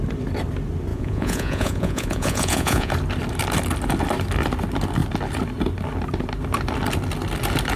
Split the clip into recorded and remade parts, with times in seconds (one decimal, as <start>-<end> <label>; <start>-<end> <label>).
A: 0.0-0.9 recorded; 0.9-2.9 remade; 2.9-7.8 recorded